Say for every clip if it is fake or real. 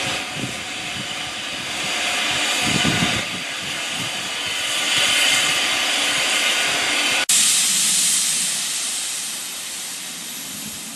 real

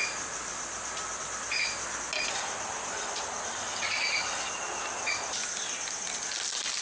real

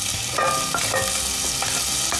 real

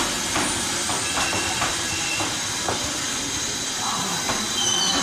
real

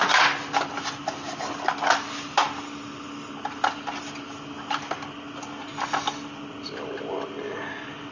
real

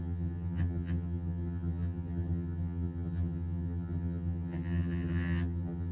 fake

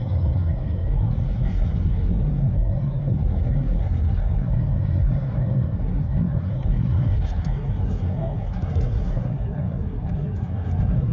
fake